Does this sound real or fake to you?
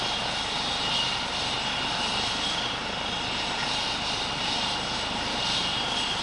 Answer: real